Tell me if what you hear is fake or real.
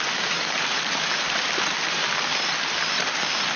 real